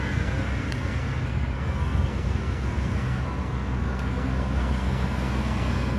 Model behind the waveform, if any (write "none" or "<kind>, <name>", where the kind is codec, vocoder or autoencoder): codec, SNAC